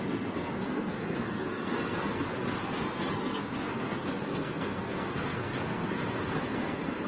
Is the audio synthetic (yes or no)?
yes